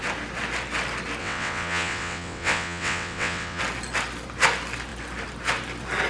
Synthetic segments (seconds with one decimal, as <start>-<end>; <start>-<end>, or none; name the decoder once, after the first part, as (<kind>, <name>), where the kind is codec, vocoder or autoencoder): 1.2-3.6 (vocoder, WaveNeXt)